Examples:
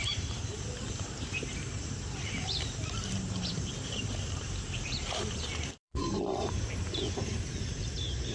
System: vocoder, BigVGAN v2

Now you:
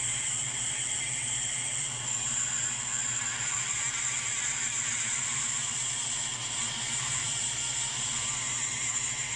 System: none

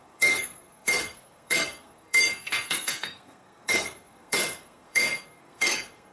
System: codec, SNAC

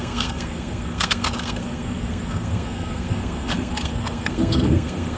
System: codec, SNAC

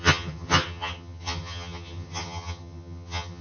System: vocoder, HiFi-GAN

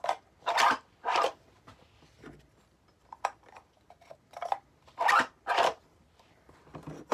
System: none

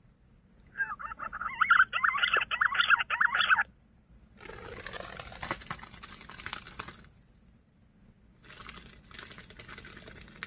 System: none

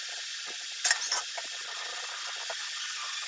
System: none